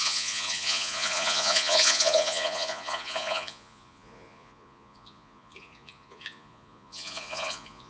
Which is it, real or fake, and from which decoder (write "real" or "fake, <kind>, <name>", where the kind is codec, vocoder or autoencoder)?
fake, vocoder, Vocos